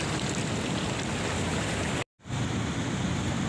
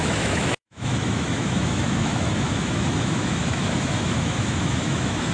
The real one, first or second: first